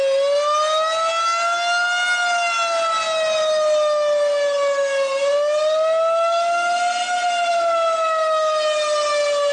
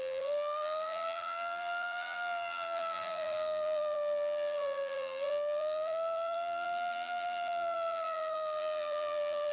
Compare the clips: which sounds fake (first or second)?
second